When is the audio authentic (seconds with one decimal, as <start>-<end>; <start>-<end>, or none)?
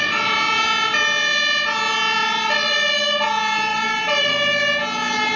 0.0-2.2; 2.9-3.7; 4.3-5.4